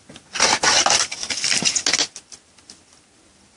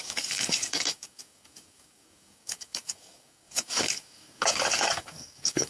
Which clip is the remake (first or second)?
second